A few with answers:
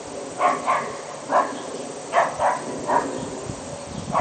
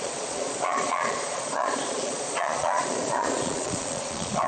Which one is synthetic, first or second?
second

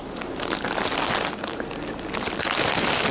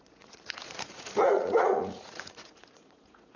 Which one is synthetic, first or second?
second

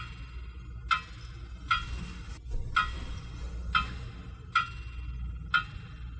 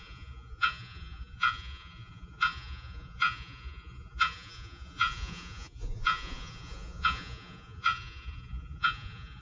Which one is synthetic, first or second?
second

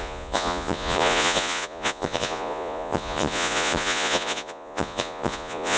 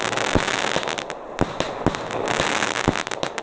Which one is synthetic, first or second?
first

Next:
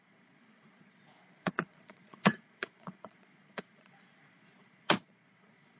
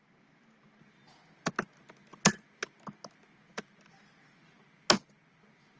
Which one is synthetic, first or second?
first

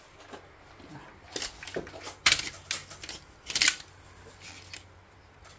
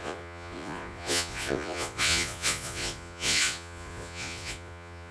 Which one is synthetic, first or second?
second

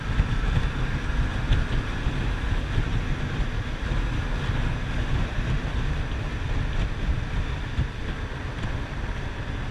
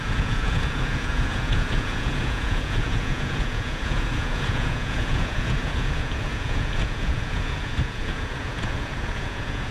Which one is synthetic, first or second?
second